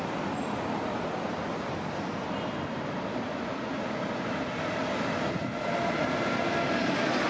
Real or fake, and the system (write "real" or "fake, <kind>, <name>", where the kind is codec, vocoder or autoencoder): real